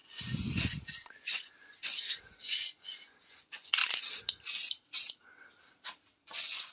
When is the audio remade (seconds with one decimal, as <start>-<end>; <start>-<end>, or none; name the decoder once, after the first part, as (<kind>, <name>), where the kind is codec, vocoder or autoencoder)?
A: 0.0-3.8 (vocoder, Vocos); 6.2-6.7